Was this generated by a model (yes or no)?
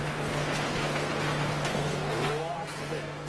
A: yes